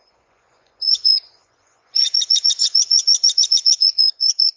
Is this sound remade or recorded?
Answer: remade